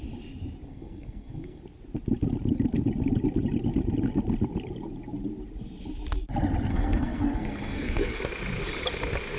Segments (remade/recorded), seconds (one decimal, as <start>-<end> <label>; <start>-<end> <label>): 0.0-0.7 recorded; 0.7-1.6 remade; 1.6-6.7 recorded; 6.7-8.2 remade; 8.2-9.4 recorded